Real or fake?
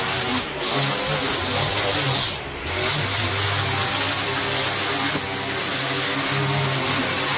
real